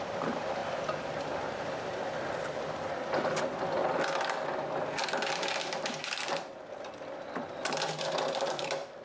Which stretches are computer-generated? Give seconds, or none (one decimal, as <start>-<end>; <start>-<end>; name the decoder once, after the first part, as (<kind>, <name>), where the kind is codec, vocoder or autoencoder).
0.0-3.8 (vocoder, BigVGAN v2); 5.3-9.0